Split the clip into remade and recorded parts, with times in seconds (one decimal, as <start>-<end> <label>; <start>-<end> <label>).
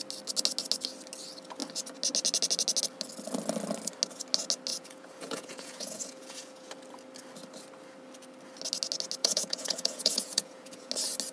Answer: 0.0-4.7 recorded; 4.7-6.7 remade; 6.7-9.2 recorded; 9.2-10.9 remade; 10.9-11.3 recorded